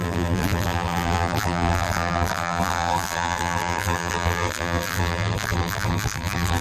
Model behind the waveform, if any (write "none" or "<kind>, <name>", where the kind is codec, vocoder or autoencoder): vocoder, BigVGAN v2